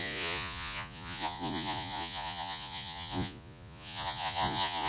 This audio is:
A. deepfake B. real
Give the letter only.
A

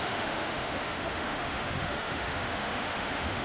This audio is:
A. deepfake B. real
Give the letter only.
A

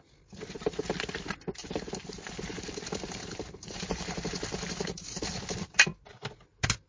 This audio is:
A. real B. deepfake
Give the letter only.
A